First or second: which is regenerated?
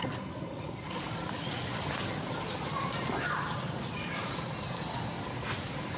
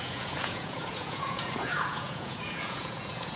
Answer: second